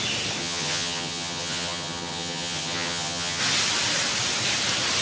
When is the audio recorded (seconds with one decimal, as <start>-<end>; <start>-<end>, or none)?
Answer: 0.0-0.4; 3.4-5.0